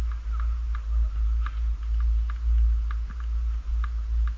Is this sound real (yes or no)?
yes